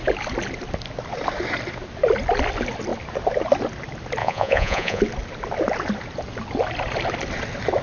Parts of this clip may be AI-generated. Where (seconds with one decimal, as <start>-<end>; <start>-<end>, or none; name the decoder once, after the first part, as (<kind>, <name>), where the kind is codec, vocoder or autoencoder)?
4.2-5.0 (vocoder, Vocos)